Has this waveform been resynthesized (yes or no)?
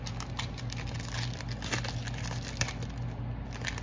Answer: no